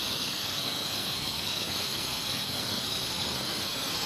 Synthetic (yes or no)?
yes